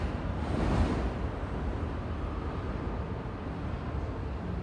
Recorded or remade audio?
recorded